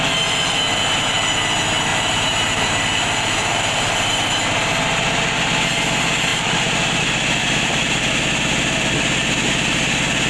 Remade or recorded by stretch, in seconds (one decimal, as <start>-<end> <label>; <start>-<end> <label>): 0.0-1.9 recorded; 1.9-4.3 remade; 4.3-6.3 recorded; 6.3-7.0 remade; 7.0-7.4 recorded; 7.4-8.0 remade; 8.0-10.3 recorded

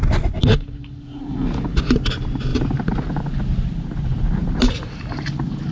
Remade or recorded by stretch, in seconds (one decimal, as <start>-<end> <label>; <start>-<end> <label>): 0.0-4.4 recorded; 4.4-5.7 remade

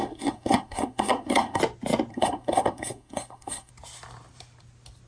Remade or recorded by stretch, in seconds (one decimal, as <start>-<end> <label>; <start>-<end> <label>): 0.0-1.6 remade; 1.6-2.1 recorded; 2.1-3.7 remade; 3.7-5.1 recorded

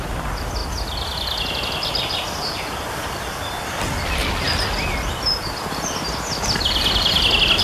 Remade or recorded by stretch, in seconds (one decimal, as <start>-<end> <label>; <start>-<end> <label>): 0.0-0.6 remade; 0.6-1.9 recorded; 1.9-4.2 remade; 4.2-7.6 recorded

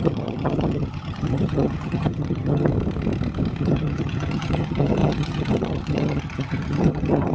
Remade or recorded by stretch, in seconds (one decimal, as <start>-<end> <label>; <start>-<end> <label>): 0.0-2.7 remade; 2.7-3.6 recorded; 3.6-7.3 remade

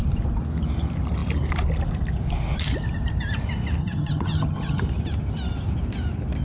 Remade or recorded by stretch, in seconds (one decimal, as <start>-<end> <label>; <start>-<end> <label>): 0.0-3.8 recorded; 3.8-4.8 remade; 4.8-6.4 recorded

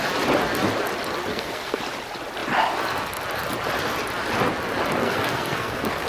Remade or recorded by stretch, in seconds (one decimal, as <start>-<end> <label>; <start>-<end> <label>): 0.0-1.3 recorded; 1.3-1.8 remade; 1.8-5.0 recorded; 5.0-6.1 remade

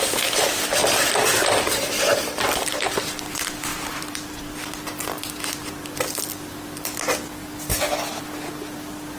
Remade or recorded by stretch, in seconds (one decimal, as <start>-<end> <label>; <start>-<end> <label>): 0.0-0.8 recorded; 0.8-2.9 remade; 2.9-3.7 recorded; 3.7-4.5 remade; 4.5-9.2 recorded